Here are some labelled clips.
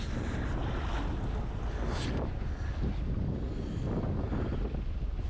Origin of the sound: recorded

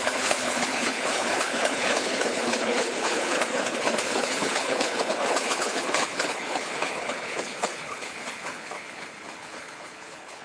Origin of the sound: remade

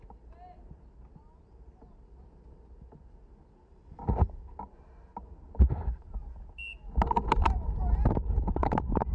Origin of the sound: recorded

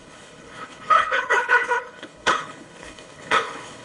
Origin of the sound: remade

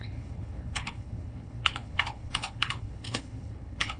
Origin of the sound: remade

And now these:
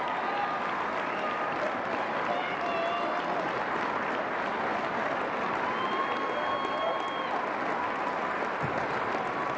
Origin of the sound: recorded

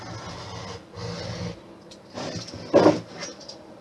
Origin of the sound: recorded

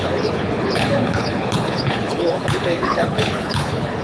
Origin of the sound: remade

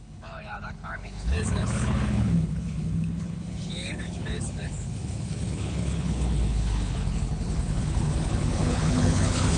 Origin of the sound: remade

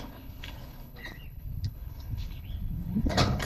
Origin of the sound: remade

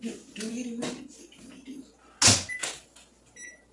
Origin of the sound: recorded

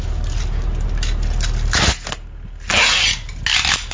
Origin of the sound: recorded